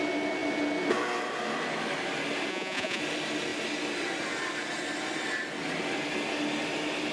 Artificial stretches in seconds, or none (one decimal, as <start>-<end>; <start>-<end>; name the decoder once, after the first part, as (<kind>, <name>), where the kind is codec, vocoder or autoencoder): 2.5-3.0 (vocoder, Vocos)